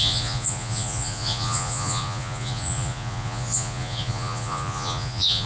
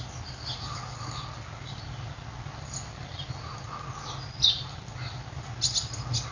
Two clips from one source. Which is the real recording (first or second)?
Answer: second